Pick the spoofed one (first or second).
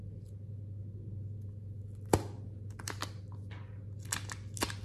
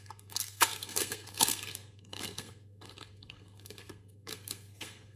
second